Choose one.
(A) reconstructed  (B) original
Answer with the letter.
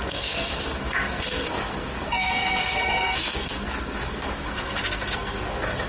A